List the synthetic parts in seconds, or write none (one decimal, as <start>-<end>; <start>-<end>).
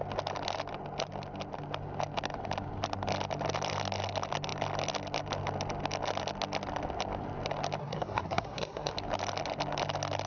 7.8-8.9